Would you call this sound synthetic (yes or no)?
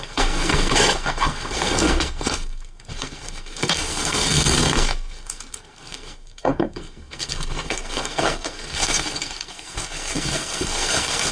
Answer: yes